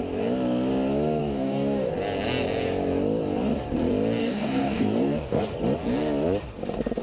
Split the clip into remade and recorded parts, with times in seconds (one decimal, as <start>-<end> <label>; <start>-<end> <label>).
0.0-1.2 recorded; 1.2-1.9 remade; 1.9-4.2 recorded; 4.2-5.4 remade; 5.4-7.0 recorded